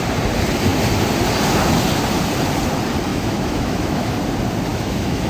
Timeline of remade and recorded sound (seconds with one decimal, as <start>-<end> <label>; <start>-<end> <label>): 0.0-3.1 recorded; 3.1-4.2 remade; 4.2-4.7 recorded; 4.7-5.3 remade